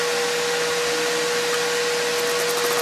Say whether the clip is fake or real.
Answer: real